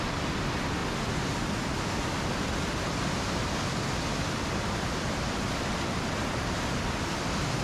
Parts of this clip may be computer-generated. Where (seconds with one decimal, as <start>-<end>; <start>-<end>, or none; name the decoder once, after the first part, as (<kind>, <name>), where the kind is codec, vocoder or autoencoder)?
none